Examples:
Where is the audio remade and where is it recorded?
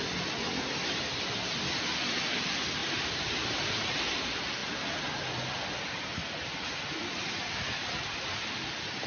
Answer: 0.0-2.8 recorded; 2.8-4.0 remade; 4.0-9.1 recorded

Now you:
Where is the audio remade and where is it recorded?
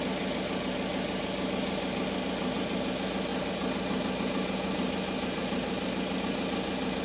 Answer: 0.0-7.0 recorded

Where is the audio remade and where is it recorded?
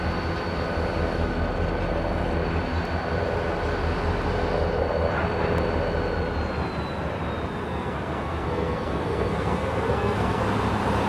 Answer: 0.0-7.6 recorded; 7.6-10.4 remade; 10.4-11.1 recorded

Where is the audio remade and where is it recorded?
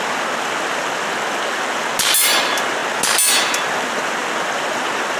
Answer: 0.0-5.2 recorded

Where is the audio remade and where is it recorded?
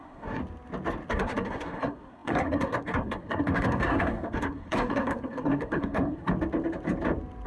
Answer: 0.0-0.4 remade; 0.4-1.1 recorded; 1.1-6.3 remade; 6.3-7.5 recorded